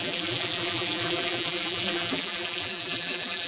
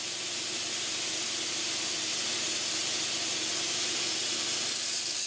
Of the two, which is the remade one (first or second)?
first